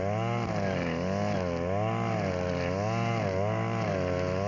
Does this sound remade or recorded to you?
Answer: recorded